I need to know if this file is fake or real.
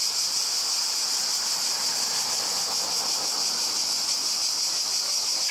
real